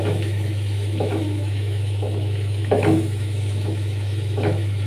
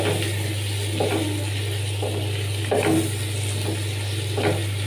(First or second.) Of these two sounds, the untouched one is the second